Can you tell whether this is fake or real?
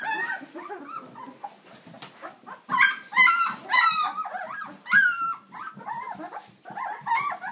real